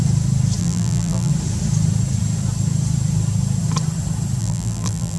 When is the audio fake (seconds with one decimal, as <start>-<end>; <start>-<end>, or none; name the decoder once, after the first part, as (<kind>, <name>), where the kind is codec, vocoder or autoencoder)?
0.6-1.3 (vocoder, BigVGAN v2); 4.4-5.2